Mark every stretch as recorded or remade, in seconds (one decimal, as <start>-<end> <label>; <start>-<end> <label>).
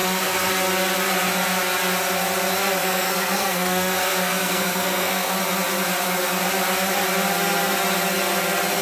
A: 0.0-0.5 remade; 0.5-2.8 recorded; 2.8-5.4 remade; 5.4-8.8 recorded